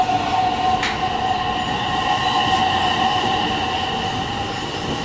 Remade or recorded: recorded